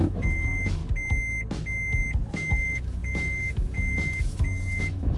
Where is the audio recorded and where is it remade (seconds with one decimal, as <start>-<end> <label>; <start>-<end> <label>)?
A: 0.0-0.8 remade; 0.8-2.5 recorded; 2.5-5.2 remade